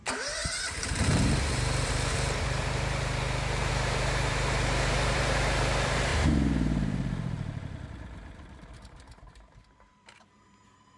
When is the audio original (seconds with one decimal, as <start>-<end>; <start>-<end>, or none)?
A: none

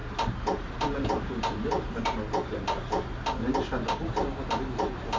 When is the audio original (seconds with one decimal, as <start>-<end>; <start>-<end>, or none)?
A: 0.0-5.2

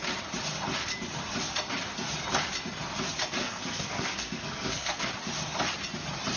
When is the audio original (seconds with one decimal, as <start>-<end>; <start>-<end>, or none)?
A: 0.0-3.4; 5.1-6.4

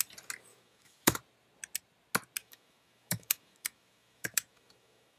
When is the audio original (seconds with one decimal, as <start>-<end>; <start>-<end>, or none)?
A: 0.0-0.5; 1.2-2.4